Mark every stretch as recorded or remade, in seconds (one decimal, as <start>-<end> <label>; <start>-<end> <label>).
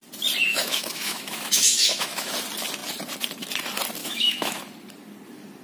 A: 0.0-0.5 recorded; 0.5-2.3 remade; 2.3-4.0 recorded; 4.0-4.6 remade; 4.6-5.6 recorded